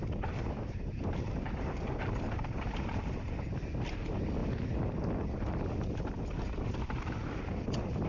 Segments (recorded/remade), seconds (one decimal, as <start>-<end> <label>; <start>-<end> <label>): 0.0-3.2 remade; 3.2-3.9 recorded; 3.9-4.4 remade; 4.4-6.0 recorded; 6.0-8.1 remade